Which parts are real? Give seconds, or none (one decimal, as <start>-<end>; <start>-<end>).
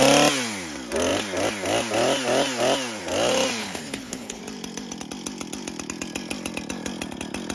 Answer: 0.0-3.6; 4.4-7.5